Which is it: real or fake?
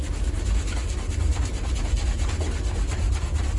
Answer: real